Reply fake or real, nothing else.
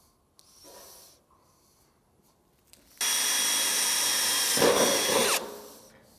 real